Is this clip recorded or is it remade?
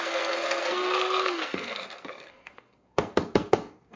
remade